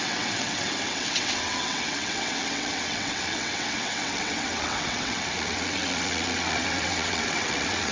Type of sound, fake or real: fake